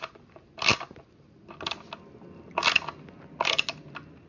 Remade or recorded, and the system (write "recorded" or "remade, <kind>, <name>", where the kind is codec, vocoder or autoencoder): recorded